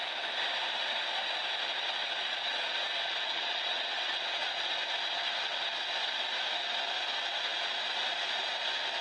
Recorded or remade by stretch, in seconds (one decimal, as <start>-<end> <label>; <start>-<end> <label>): 0.0-2.0 recorded; 2.0-4.7 remade; 4.7-9.0 recorded